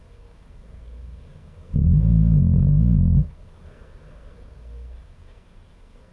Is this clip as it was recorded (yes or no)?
no